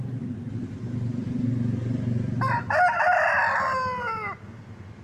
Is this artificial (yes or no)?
no